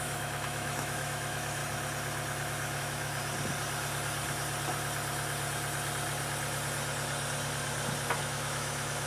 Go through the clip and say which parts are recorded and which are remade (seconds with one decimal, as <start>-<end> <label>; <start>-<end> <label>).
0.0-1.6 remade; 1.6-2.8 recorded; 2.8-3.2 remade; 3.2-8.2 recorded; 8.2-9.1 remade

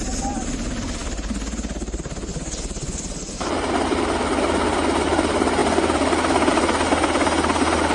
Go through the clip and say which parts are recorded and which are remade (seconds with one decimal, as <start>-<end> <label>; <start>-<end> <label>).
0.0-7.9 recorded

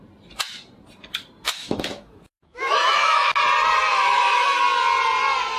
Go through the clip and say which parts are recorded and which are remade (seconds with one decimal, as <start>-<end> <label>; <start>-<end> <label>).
0.0-1.6 recorded; 1.6-3.3 remade; 3.3-3.9 recorded; 3.9-4.6 remade; 4.6-5.6 recorded

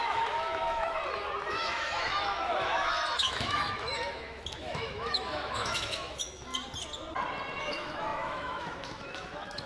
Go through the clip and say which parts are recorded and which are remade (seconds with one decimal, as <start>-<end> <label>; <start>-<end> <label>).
0.0-1.0 remade; 1.0-1.5 recorded; 1.5-6.5 remade; 6.5-7.6 recorded; 7.6-9.7 remade

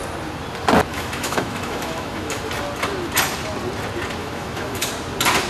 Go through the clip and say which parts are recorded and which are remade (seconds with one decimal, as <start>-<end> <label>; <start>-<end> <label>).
0.0-0.9 recorded; 0.9-2.4 remade; 2.4-4.2 recorded; 4.2-4.9 remade; 4.9-5.5 recorded